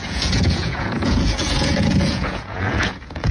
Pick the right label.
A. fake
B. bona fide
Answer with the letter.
A